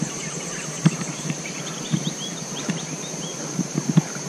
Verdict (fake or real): fake